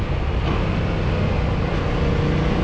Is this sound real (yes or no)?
yes